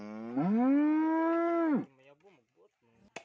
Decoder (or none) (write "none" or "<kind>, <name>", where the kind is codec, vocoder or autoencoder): none